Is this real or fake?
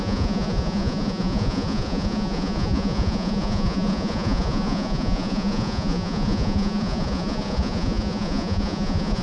fake